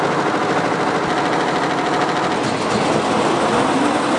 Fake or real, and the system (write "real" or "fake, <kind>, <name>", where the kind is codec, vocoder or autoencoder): real